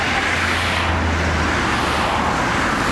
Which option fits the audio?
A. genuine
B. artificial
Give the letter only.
A